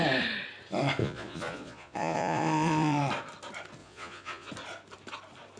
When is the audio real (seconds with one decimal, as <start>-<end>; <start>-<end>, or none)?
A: 0.0-1.0; 3.0-3.8; 4.5-5.6